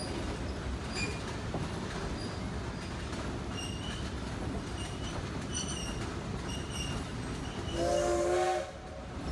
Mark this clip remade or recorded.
recorded